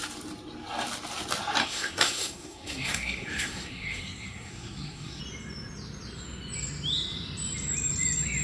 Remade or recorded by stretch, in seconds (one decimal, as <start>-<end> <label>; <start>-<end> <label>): 0.0-1.6 recorded; 1.6-5.2 remade; 5.2-8.4 recorded